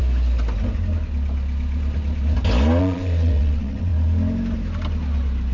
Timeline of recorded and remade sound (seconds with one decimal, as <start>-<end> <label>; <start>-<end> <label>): 0.0-2.8 recorded; 2.8-3.9 remade; 3.9-5.5 recorded